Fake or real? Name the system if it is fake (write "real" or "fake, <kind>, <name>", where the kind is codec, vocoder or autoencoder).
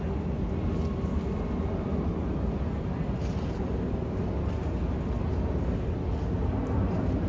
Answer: real